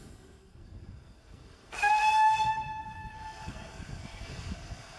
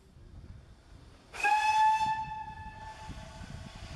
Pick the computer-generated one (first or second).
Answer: first